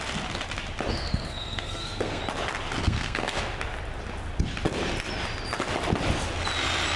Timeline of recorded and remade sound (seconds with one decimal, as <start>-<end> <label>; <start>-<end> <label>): 0.0-0.9 recorded; 0.9-2.2 remade; 2.2-2.8 recorded; 2.8-3.4 remade; 3.4-7.0 recorded